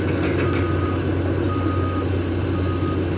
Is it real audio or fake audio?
real